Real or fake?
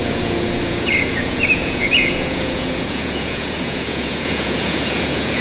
fake